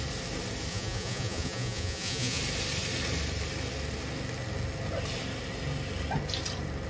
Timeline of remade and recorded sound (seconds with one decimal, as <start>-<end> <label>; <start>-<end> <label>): 0.0-0.7 recorded; 0.7-2.4 remade; 2.4-6.9 recorded